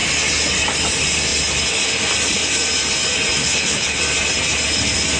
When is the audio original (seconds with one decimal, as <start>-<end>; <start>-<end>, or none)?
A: 0.0-3.4; 4.0-5.2